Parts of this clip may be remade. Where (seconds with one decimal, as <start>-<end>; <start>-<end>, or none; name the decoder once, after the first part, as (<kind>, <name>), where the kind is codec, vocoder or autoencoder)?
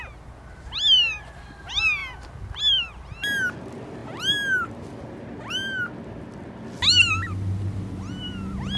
none